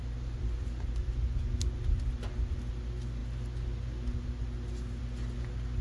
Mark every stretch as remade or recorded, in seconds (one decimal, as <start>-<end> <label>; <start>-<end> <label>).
0.0-5.8 recorded